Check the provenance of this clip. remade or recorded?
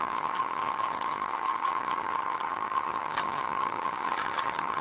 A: remade